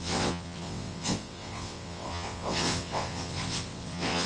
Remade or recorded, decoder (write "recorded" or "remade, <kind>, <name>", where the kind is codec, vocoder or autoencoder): remade, vocoder, WaveNeXt